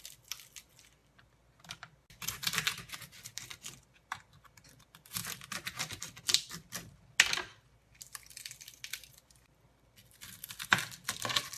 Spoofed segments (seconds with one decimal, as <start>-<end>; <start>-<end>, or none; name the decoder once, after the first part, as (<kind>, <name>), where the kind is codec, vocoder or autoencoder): none